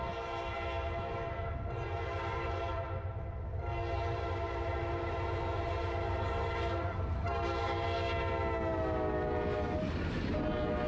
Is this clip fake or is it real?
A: real